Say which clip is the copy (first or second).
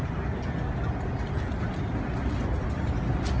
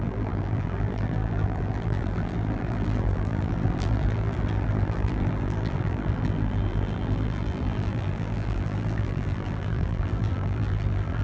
second